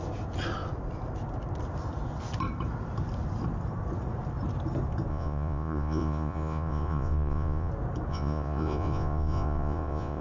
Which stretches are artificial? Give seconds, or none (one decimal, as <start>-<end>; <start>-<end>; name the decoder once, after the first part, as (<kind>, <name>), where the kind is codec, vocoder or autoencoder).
5.1-7.7 (vocoder, Vocos); 8.1-10.2